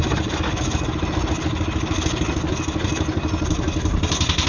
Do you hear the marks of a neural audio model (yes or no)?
no